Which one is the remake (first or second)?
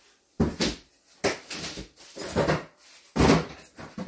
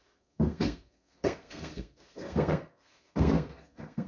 second